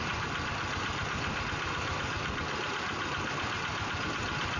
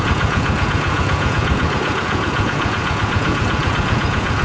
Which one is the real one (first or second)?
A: first